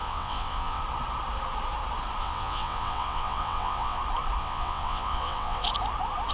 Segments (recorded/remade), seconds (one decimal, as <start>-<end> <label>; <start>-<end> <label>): 0.0-0.8 remade; 0.8-2.2 recorded; 2.2-4.0 remade; 4.0-4.4 recorded; 4.4-5.6 remade; 5.6-6.3 recorded